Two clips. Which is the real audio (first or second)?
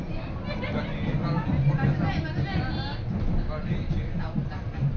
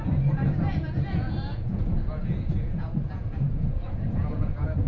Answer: first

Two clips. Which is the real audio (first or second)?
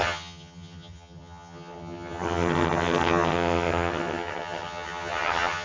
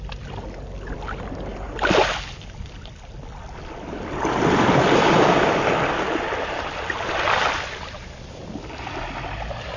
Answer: second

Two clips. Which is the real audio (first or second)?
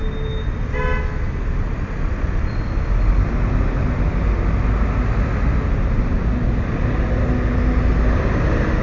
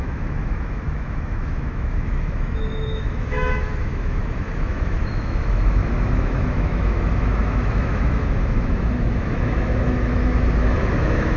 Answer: first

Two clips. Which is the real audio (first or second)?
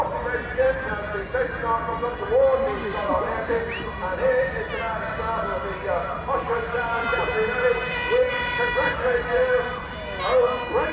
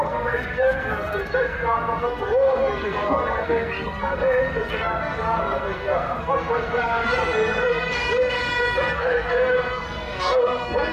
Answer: first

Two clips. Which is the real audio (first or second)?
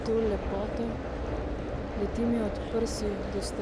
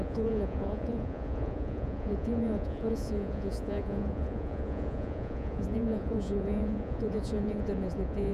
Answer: first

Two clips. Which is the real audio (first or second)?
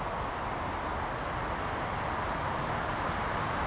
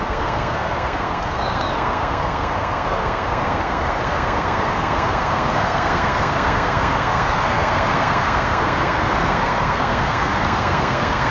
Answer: first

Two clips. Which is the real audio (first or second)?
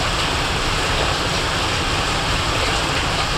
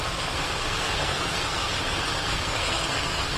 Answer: first